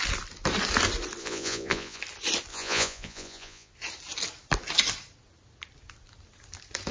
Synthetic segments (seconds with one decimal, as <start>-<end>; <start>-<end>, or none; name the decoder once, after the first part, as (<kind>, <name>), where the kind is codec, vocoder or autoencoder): 1.2-2.0 (vocoder, Vocos); 2.5-3.7